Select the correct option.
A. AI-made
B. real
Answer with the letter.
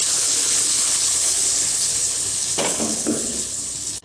A